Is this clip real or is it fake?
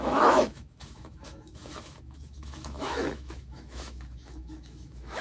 fake